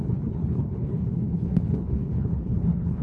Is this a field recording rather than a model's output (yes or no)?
no